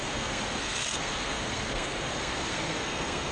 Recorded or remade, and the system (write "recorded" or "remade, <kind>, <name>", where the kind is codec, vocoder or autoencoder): remade, codec, SNAC